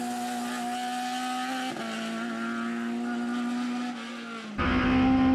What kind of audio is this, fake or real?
real